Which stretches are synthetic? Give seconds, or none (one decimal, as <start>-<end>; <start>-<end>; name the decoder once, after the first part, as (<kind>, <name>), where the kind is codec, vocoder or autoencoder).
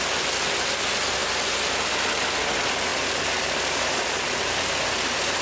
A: none